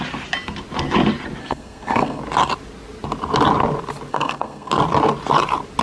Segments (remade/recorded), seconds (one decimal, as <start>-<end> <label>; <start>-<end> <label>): 0.0-1.4 recorded; 1.4-2.2 remade; 2.2-4.1 recorded; 4.1-4.7 remade; 4.7-5.8 recorded